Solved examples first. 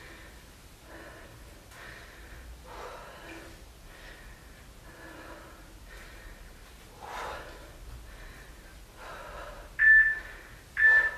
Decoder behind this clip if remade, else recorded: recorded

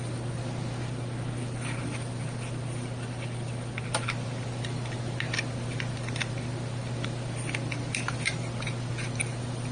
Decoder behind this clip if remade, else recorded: recorded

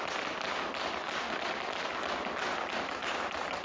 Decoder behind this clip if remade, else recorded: recorded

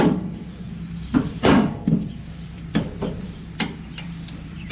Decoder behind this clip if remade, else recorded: remade, vocoder, BigVGAN v2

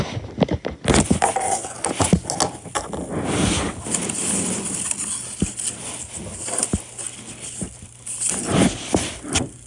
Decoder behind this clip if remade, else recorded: recorded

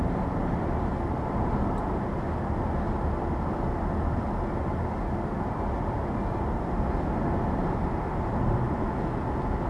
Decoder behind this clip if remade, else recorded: recorded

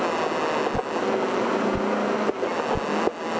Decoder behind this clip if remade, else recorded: recorded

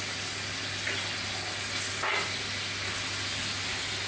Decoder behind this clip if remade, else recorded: recorded